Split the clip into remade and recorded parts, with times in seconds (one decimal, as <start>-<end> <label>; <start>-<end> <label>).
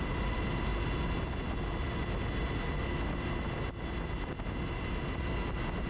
0.0-5.9 recorded